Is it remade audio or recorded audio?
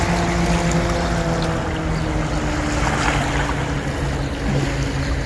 recorded